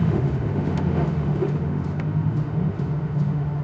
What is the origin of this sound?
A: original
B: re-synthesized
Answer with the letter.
B